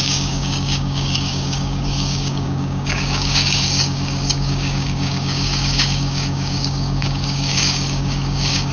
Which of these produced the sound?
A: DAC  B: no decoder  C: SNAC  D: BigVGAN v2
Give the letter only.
A